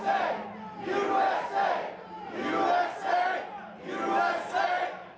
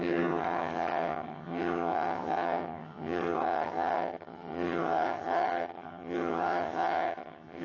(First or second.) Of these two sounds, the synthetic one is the second